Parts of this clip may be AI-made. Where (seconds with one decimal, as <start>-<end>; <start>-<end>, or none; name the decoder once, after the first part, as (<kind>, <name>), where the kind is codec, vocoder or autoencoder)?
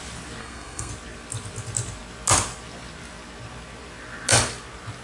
0.4-0.9 (codec, SNAC)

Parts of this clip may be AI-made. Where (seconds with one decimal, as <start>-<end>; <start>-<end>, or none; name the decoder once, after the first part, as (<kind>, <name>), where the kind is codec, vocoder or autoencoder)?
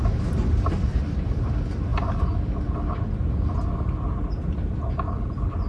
0.9-1.4 (vocoder, BigVGAN v2)